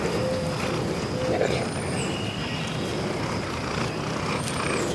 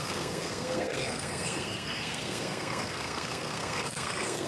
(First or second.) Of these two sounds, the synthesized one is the second